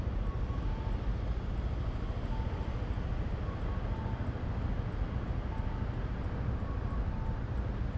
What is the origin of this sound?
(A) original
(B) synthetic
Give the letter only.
A